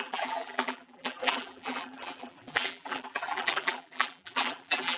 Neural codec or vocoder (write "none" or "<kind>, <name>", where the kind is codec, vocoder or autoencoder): vocoder, BigVGAN v2